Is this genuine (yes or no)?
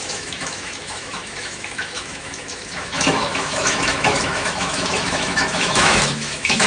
no